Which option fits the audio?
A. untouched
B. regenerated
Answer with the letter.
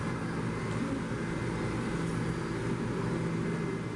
A